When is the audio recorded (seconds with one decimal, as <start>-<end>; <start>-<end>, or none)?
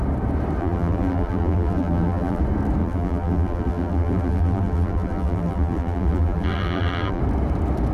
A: 0.0-0.6; 2.4-2.8; 7.2-7.9